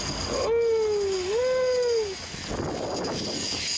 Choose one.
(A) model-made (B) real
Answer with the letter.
B